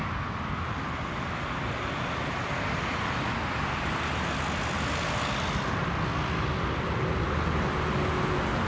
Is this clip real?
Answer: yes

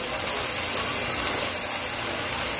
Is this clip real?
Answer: yes